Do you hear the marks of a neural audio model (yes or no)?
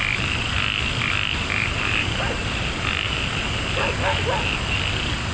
no